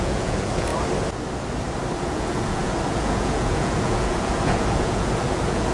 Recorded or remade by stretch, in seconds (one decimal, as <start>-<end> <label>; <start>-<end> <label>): 0.0-0.7 remade; 0.7-2.0 recorded; 2.0-5.7 remade